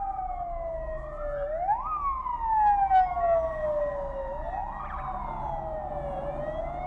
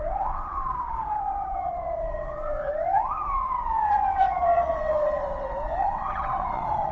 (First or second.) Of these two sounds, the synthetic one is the second